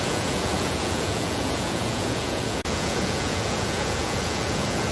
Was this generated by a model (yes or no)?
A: yes